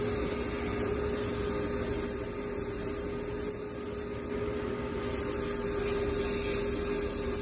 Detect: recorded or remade recorded